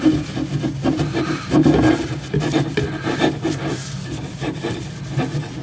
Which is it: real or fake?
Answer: real